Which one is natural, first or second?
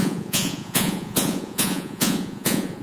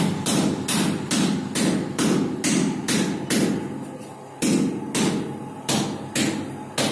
second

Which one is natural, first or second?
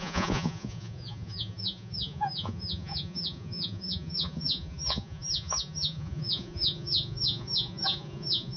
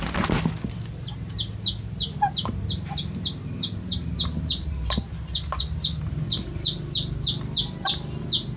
second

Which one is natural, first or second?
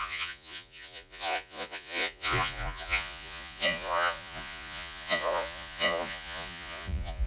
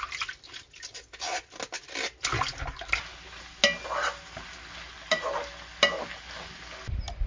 second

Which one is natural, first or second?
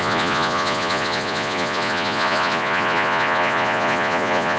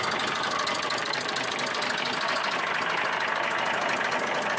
second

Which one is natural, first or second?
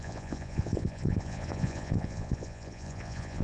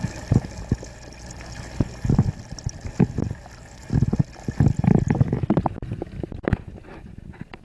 second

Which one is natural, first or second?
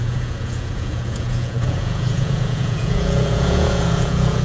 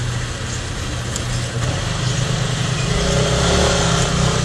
second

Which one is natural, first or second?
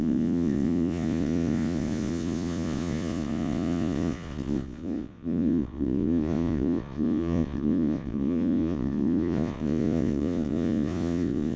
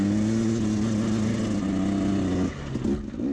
second